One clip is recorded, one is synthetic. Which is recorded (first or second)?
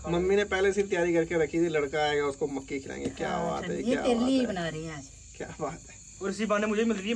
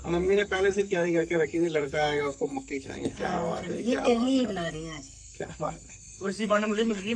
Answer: first